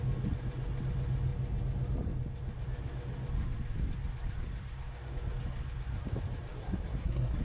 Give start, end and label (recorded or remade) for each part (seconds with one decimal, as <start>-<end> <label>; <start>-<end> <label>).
0.0-6.5 recorded; 6.5-7.4 remade